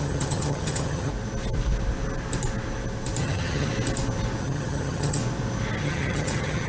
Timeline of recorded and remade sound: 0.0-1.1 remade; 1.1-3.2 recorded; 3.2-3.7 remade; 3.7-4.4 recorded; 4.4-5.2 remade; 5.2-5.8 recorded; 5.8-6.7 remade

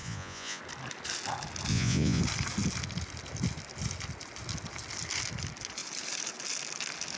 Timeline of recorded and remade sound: 0.0-0.6 remade; 0.6-1.7 recorded; 1.7-2.2 remade; 2.2-7.2 recorded

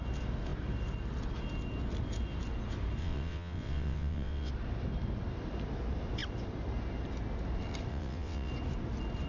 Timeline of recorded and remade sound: 0.0-3.0 recorded; 3.0-4.5 remade; 4.5-7.9 recorded; 7.9-8.5 remade; 8.5-9.3 recorded

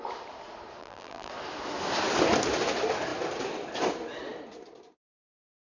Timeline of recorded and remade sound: 0.0-0.8 recorded; 0.8-1.3 remade; 1.3-5.7 recorded

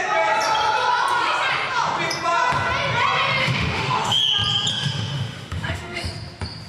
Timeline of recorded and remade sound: 0.0-3.4 recorded; 3.4-4.2 remade; 4.2-4.7 recorded; 4.7-6.1 remade; 6.1-6.7 recorded

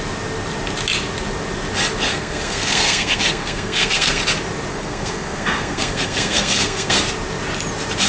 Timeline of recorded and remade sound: 0.0-2.1 recorded; 2.1-4.2 remade; 4.2-4.7 recorded; 4.7-7.0 remade; 7.0-8.1 recorded

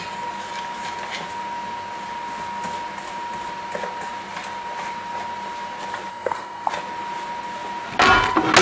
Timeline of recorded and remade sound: 0.0-6.1 recorded; 6.1-6.7 remade; 6.7-8.6 recorded

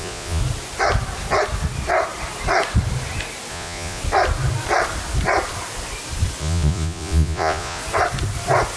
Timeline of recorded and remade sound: 0.0-0.4 remade; 0.4-3.5 recorded; 3.5-4.0 remade; 4.0-6.4 recorded; 6.4-7.8 remade; 7.8-8.8 recorded